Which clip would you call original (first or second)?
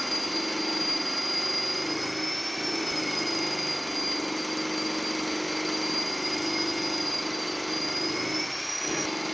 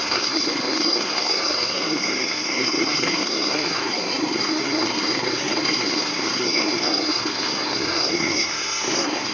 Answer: first